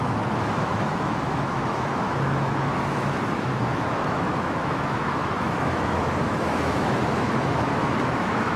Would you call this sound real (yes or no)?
no